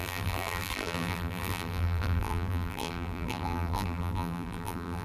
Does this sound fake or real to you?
fake